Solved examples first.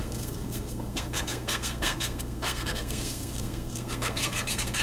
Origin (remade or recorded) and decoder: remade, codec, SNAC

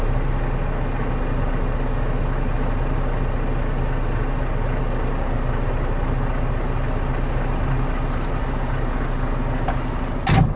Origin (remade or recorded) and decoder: recorded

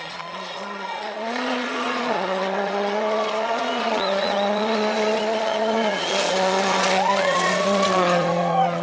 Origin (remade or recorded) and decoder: remade, vocoder, Vocos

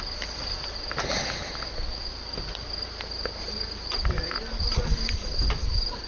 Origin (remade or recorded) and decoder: recorded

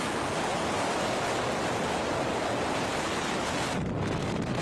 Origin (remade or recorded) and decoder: recorded